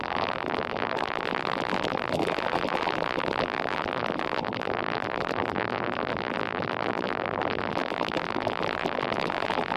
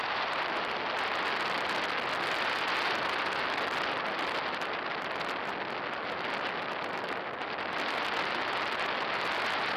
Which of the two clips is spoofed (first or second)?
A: first